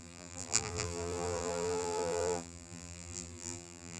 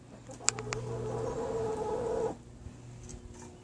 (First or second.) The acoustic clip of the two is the second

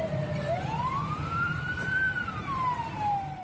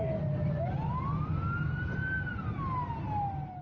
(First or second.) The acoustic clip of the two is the second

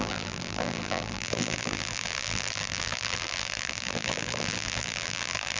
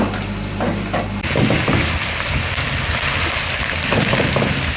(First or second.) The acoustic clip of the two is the second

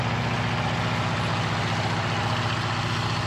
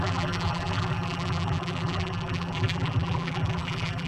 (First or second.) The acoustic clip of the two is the first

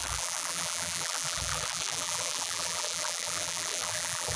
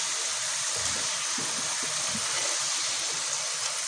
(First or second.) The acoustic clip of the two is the second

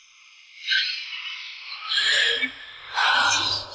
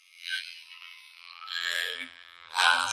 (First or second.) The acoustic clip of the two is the first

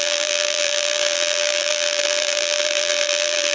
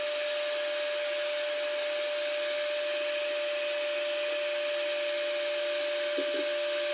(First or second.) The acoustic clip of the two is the second